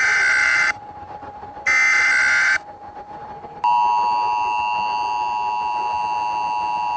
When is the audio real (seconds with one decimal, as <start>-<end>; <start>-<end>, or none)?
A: 0.0-0.4; 1.6-7.0